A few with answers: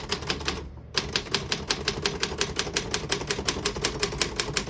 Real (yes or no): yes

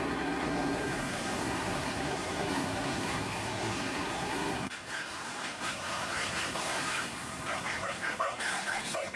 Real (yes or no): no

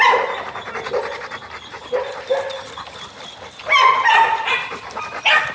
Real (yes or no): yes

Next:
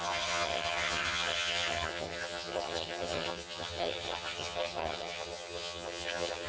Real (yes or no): no